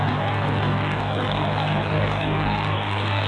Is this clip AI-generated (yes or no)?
yes